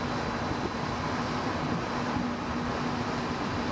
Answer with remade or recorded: recorded